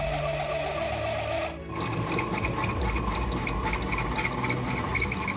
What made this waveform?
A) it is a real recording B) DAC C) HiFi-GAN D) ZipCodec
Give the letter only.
A